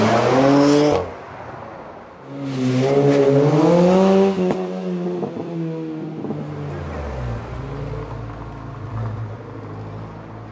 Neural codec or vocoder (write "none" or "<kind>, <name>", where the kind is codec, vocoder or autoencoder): none